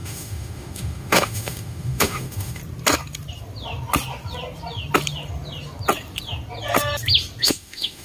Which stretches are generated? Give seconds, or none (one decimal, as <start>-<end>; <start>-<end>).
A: 0.0-2.6; 7.4-8.0